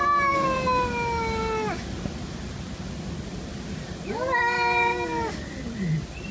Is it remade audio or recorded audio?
recorded